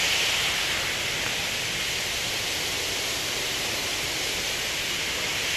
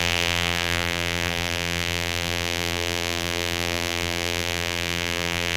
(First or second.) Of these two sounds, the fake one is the second